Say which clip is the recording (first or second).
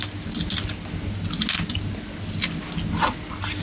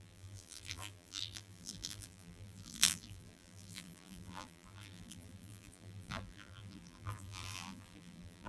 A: first